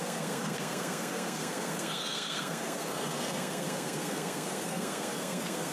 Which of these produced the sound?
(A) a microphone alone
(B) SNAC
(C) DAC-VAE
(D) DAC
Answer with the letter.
B